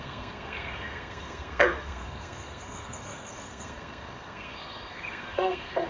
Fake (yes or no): yes